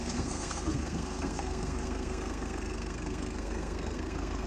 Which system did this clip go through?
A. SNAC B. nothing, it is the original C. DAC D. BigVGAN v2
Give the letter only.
A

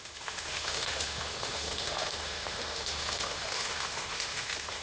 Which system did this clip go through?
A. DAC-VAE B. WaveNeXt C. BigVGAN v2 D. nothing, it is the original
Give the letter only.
A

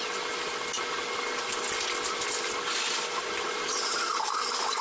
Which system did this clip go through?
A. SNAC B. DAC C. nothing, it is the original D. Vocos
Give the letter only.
C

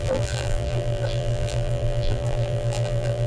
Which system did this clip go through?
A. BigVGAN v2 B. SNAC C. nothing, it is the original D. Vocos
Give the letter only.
A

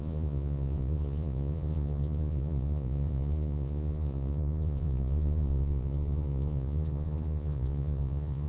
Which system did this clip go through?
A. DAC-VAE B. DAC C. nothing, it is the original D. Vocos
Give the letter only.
D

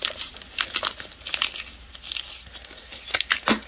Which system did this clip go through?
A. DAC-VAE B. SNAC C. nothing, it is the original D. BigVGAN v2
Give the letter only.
C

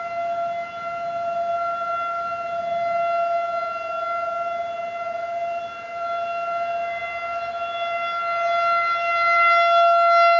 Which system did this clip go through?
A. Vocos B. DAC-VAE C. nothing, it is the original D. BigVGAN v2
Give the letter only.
C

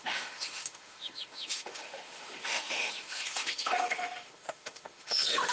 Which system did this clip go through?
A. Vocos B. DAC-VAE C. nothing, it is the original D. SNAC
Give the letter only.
B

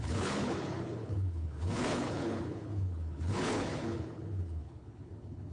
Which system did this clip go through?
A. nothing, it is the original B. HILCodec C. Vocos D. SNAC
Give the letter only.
B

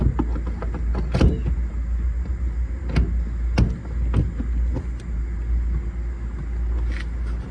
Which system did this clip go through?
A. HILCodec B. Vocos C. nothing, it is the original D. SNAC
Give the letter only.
C